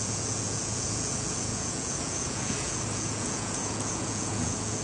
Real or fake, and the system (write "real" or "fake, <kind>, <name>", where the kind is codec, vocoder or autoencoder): fake, vocoder, Vocos